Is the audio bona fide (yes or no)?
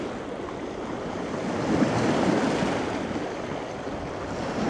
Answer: yes